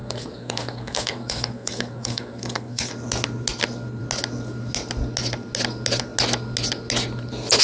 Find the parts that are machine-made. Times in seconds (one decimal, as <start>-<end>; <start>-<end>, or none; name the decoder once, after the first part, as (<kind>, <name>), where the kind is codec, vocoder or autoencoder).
0.0-2.9 (codec, SNAC)